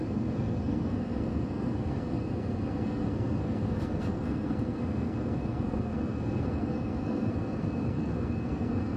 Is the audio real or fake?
fake